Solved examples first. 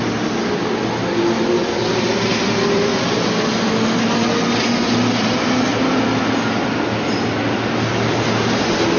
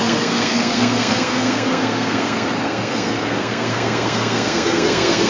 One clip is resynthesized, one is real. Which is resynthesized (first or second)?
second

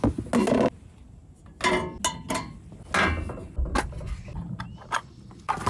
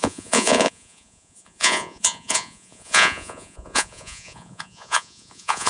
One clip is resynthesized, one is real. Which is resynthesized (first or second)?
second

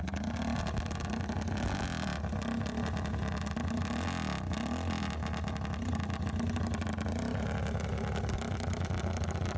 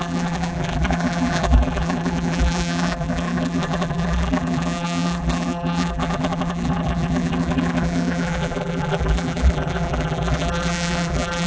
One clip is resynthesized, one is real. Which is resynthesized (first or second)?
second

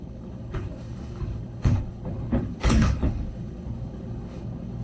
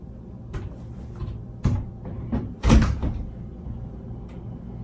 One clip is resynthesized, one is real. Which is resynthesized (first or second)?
first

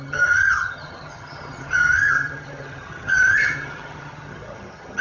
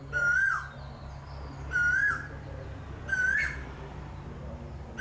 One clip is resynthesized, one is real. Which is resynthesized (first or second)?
first